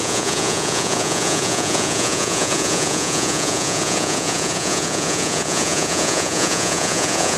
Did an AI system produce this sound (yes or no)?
yes